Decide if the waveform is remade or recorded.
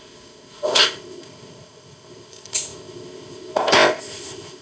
remade